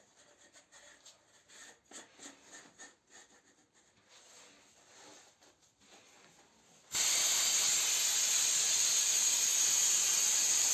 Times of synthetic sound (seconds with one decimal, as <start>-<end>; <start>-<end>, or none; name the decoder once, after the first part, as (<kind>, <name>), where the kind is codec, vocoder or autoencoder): none